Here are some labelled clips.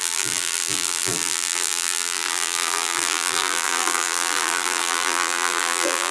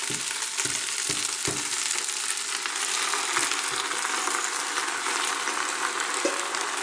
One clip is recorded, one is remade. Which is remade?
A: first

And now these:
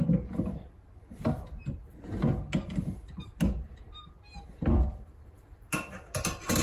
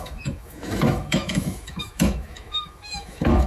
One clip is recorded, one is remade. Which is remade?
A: second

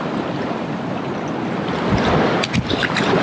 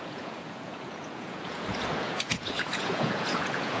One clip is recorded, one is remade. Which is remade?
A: second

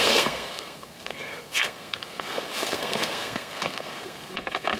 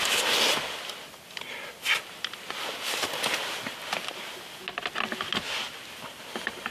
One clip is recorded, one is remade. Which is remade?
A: first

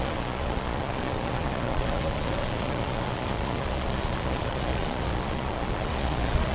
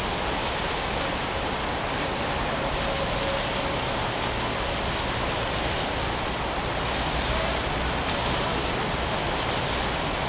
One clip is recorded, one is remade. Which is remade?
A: first